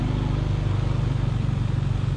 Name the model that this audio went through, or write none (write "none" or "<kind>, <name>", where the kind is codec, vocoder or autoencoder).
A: none